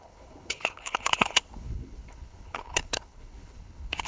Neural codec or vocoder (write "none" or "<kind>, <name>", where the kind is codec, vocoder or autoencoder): codec, HILCodec